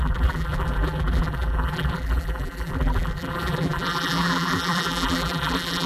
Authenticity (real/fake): fake